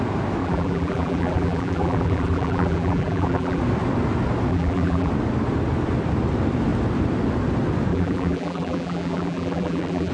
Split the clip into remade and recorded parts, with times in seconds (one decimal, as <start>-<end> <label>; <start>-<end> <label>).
0.0-0.4 recorded; 0.4-3.6 remade; 3.6-4.5 recorded; 4.5-5.1 remade; 5.1-7.9 recorded; 7.9-10.1 remade